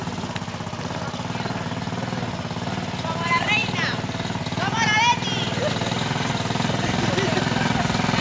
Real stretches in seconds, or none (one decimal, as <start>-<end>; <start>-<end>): 0.0-8.2